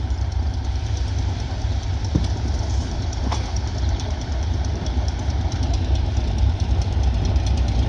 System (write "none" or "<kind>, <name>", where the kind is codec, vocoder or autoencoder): vocoder, BigVGAN v2